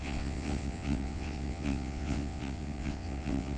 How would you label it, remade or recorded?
remade